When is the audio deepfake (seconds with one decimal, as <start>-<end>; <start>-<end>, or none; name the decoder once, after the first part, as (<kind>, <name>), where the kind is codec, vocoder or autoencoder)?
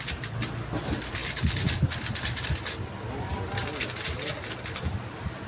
none